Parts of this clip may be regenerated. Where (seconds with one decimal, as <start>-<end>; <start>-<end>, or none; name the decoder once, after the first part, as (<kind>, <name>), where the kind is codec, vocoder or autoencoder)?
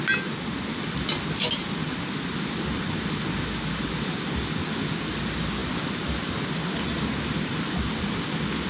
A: none